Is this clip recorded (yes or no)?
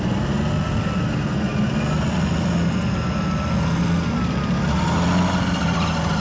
yes